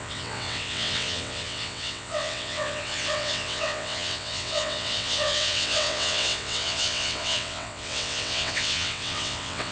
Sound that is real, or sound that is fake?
fake